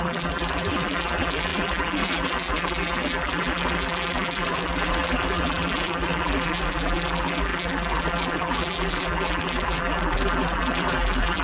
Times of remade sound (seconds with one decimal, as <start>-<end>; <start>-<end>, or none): 0.0-11.4